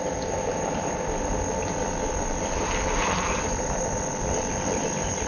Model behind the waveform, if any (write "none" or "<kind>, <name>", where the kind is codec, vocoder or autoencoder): none